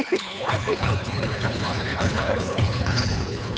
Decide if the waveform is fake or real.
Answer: fake